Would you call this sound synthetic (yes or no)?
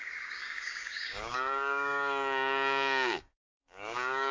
yes